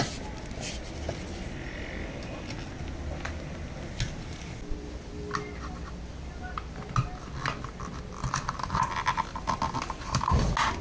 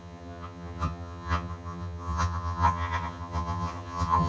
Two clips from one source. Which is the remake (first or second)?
second